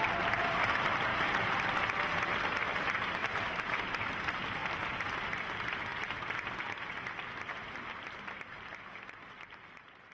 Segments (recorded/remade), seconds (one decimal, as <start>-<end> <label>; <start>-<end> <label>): 0.0-1.1 recorded; 1.1-1.7 remade; 1.7-3.2 recorded; 3.2-4.1 remade; 4.1-10.1 recorded